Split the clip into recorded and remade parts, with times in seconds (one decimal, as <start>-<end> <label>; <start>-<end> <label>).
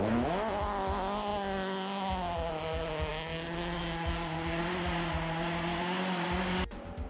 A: 0.0-7.1 recorded